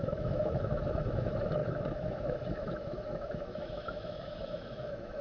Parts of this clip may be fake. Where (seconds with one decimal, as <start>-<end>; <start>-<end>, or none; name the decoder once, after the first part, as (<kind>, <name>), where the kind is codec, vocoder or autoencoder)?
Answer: 0.0-5.2 (autoencoder, DAC-VAE)